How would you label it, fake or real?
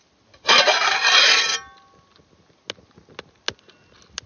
real